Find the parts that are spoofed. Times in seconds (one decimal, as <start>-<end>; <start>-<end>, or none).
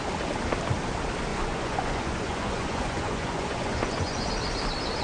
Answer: 1.3-4.3